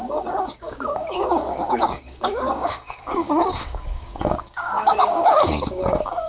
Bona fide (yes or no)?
no